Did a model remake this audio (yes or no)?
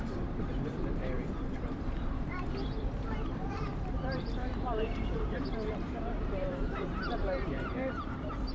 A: yes